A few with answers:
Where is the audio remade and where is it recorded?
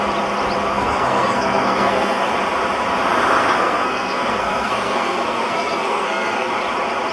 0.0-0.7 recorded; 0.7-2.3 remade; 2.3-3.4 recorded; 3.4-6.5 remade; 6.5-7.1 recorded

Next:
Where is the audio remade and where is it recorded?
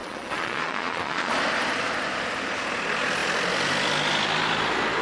0.0-1.3 remade; 1.3-5.0 recorded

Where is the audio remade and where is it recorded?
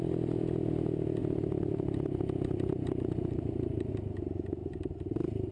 0.0-1.2 recorded; 1.2-3.9 remade; 3.9-5.5 recorded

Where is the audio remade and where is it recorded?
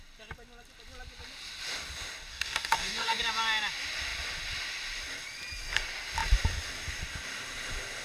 0.0-2.3 recorded; 2.3-3.2 remade; 3.2-8.0 recorded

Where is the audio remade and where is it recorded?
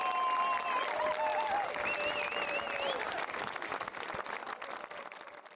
0.0-5.6 recorded